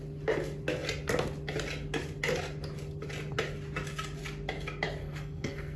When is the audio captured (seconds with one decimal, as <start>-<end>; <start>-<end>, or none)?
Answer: 0.0-5.0

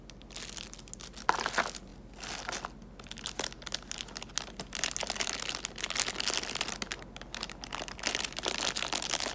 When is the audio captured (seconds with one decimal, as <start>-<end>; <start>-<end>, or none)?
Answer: 0.0-9.3

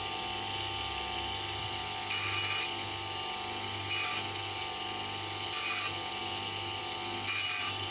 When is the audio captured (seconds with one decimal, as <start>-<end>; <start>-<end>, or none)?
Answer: 0.0-7.9

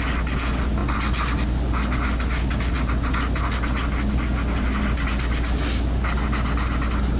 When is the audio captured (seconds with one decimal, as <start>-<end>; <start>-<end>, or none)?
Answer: 0.0-7.2

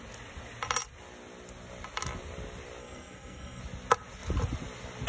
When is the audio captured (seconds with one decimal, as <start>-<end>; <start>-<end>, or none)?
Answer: 0.0-2.8; 3.6-5.1